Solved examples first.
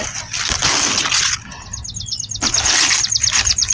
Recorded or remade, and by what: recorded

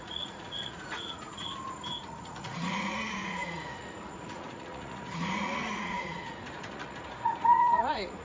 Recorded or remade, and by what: remade, vocoder, Vocos